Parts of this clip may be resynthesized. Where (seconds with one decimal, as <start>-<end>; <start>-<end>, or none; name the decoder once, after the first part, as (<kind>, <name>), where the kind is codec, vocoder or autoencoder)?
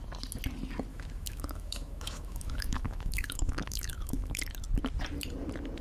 0.9-4.4 (autoencoder, DAC-VAE)